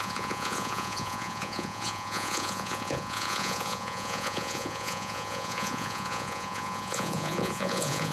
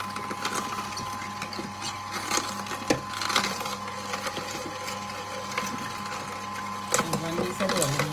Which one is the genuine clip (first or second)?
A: second